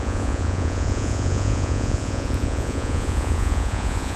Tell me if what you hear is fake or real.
fake